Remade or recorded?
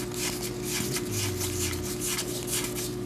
recorded